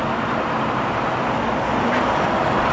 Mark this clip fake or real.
real